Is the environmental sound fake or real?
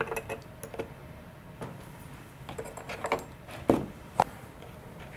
real